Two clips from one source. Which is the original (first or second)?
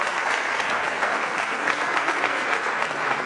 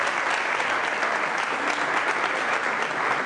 second